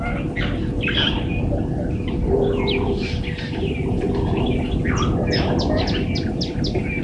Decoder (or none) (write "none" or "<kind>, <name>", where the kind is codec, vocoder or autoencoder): none